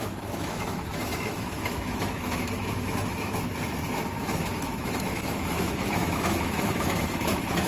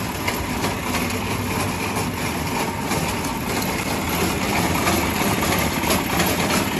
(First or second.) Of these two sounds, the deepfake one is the first